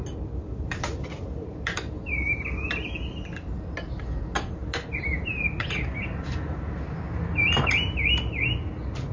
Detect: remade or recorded recorded